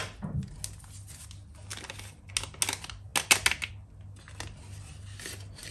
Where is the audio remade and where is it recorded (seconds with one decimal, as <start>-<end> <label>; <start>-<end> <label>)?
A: 0.0-5.7 recorded